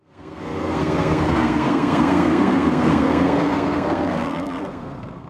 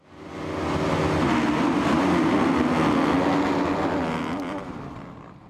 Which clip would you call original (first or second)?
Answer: second